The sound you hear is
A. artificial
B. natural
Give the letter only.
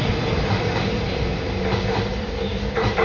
B